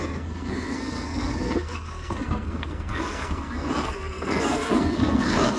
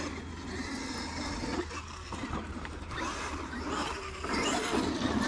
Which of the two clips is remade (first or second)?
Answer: first